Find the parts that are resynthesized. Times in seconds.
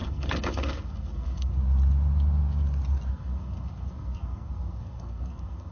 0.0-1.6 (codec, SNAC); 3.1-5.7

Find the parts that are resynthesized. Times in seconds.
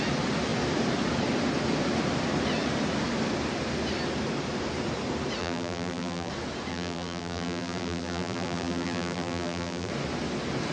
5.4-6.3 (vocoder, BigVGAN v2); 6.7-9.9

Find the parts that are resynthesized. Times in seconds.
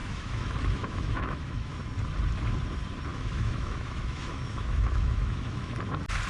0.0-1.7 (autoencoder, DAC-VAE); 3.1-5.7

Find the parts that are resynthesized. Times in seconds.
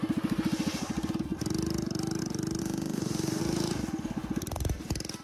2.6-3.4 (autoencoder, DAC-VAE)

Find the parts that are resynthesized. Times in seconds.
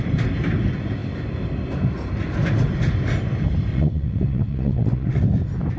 3.7-5.2 (vocoder, WaveNeXt)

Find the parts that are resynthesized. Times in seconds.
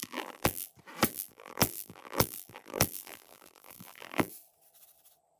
0.0-0.7 (vocoder, BigVGAN v2); 1.1-4.3